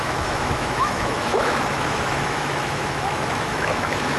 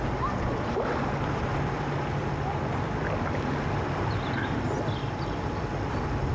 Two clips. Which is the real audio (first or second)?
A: second